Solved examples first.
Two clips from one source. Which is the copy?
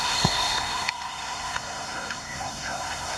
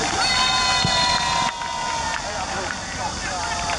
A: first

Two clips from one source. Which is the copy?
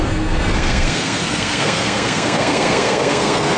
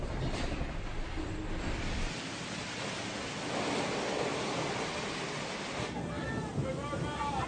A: first